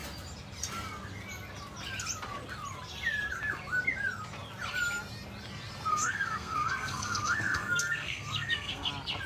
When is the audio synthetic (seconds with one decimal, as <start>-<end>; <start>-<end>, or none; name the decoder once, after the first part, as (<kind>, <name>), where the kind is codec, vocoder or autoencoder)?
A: 5.9-8.9 (codec, SNAC)

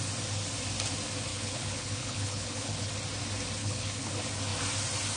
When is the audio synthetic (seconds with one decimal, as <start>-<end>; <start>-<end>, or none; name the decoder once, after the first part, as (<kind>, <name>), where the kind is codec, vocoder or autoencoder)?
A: 1.3-2.9 (codec, HILCodec); 3.6-4.1

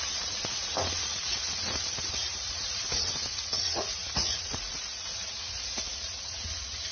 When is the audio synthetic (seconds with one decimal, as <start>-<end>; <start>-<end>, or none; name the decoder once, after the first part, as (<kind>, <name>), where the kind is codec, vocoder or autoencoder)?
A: 0.0-6.9 (vocoder, Vocos)

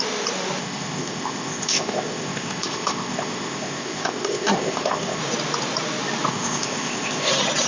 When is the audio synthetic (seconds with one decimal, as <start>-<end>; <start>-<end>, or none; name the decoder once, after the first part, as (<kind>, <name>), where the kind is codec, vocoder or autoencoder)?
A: 0.6-5.2 (codec, ZipCodec); 6.3-7.3

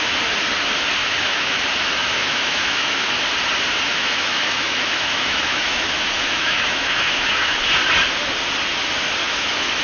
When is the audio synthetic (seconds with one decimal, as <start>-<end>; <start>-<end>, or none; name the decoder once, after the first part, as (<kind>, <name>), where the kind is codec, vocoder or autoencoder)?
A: 1.0-1.6 (autoencoder, DAC-VAE); 2.0-3.1; 3.9-7.6; 9.2-9.8

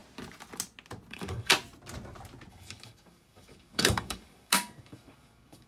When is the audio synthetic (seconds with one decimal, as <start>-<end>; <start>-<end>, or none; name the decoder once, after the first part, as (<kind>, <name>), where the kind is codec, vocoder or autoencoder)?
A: 1.1-1.5 (codec, DAC); 2.5-5.7

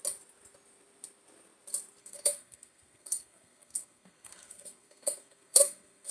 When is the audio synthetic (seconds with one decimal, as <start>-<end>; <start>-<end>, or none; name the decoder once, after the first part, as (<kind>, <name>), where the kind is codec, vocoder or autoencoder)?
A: 2.0-6.1 (codec, SNAC)